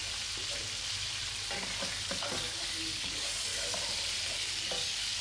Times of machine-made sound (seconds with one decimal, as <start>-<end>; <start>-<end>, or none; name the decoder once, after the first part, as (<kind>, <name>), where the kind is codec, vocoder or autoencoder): 2.2-3.5 (codec, DAC); 4.5-5.2